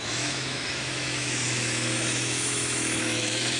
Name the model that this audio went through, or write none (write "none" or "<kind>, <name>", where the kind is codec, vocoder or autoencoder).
autoencoder, DAC-VAE